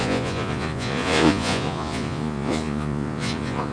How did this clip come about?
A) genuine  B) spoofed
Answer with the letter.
B